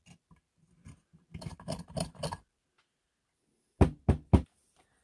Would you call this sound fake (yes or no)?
no